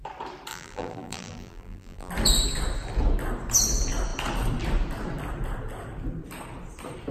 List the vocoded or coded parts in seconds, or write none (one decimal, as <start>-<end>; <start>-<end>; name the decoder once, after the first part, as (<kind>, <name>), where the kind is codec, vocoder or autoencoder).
0.5-2.1 (vocoder, BigVGAN v2)